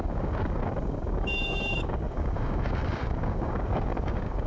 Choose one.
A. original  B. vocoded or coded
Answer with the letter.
B